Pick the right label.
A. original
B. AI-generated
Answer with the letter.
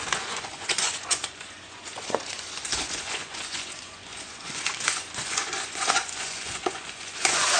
B